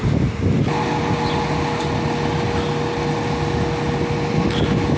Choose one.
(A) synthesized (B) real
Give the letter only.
B